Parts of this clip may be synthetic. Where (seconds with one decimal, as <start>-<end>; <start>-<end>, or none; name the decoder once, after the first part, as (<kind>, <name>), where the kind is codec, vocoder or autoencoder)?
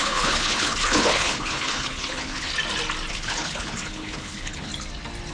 0.0-2.5 (codec, HILCodec); 3.1-4.7